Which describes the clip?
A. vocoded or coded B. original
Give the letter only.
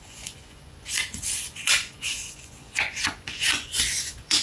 A